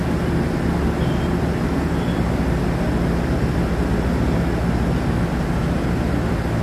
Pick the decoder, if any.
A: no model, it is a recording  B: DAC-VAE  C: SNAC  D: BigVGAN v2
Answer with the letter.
A